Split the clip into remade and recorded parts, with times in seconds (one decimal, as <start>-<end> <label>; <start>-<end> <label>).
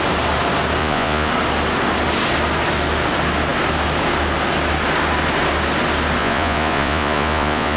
0.0-0.8 recorded; 0.8-1.3 remade; 1.3-6.2 recorded; 6.2-7.8 remade